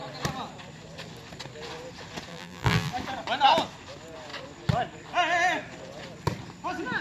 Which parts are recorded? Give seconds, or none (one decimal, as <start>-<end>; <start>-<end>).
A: 0.0-2.3; 2.9-7.0